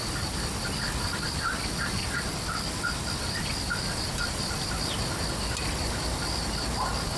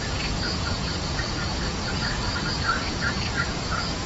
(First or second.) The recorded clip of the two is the first